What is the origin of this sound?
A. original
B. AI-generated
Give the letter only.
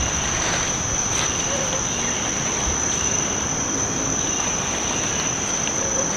B